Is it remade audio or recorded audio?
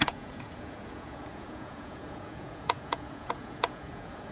remade